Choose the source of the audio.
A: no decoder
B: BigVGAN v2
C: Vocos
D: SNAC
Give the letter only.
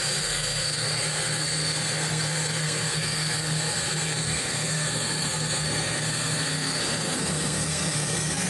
D